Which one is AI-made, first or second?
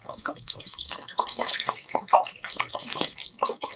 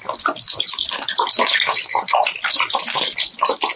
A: first